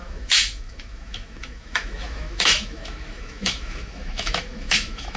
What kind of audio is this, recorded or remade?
remade